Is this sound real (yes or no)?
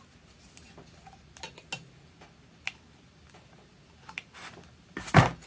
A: yes